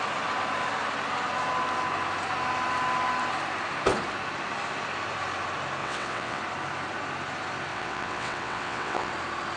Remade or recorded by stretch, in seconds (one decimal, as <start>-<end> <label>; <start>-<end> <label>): 0.0-5.8 recorded; 5.8-6.4 remade; 6.4-7.7 recorded; 7.7-9.1 remade; 9.1-9.6 recorded